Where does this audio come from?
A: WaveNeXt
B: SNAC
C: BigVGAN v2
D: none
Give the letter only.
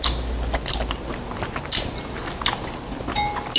D